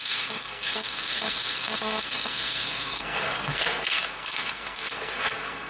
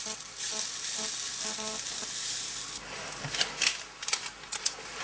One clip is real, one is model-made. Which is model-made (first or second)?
first